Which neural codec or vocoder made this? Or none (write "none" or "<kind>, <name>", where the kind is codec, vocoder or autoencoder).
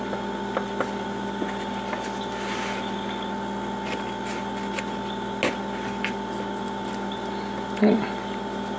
none